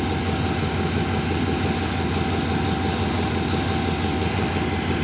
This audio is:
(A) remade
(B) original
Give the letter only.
B